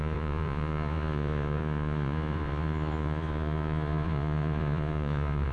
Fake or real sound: fake